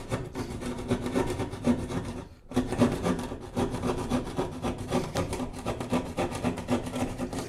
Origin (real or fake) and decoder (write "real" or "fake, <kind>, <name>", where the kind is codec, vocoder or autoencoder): fake, vocoder, BigVGAN v2